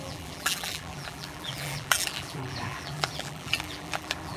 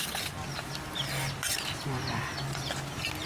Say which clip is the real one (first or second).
second